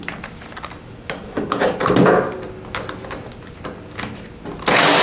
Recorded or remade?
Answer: recorded